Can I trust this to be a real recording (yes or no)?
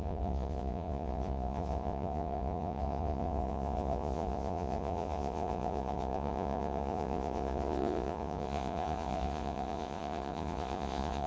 no